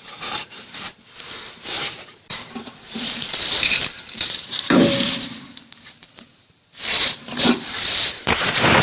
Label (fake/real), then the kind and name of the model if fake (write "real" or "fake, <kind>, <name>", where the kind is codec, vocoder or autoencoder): fake, vocoder, BigVGAN v2